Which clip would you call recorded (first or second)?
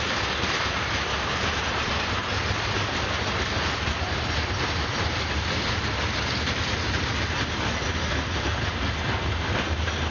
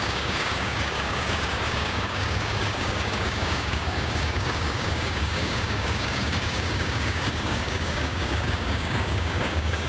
first